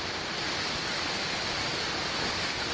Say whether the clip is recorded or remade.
recorded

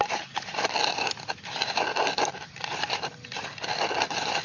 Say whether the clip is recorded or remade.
remade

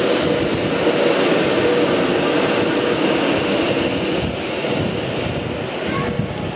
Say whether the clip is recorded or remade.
recorded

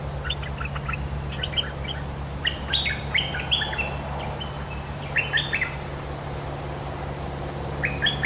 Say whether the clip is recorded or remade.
recorded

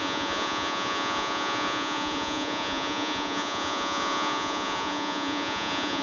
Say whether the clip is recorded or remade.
remade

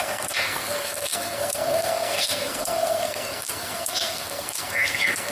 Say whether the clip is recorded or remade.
remade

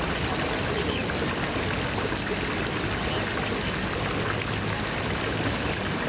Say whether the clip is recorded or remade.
recorded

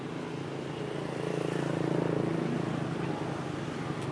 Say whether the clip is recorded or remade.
recorded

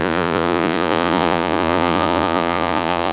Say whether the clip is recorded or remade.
remade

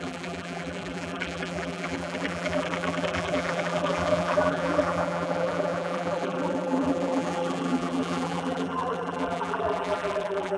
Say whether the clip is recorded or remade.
remade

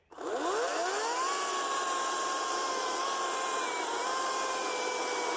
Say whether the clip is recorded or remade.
recorded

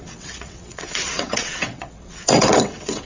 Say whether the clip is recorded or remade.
remade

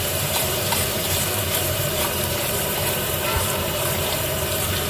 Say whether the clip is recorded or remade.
remade